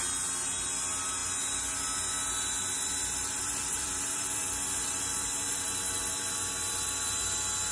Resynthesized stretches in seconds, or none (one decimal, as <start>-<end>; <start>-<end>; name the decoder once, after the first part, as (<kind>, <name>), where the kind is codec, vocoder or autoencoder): 2.6-7.2 (vocoder, BigVGAN v2)